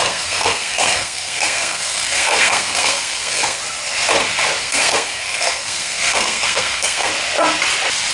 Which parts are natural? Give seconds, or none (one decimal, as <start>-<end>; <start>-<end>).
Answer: 3.6-4.6; 7.1-8.1